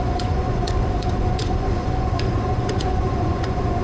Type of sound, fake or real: fake